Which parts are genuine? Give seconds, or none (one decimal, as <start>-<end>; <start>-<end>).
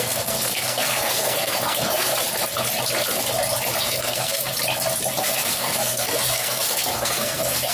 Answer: 2.1-3.8; 4.5-5.2